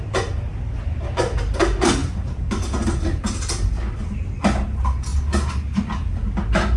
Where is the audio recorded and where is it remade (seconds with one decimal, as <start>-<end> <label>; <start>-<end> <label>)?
0.0-6.8 recorded